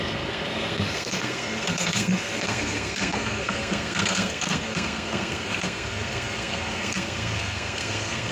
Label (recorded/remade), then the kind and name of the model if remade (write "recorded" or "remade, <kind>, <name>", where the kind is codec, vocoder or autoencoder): remade, codec, SNAC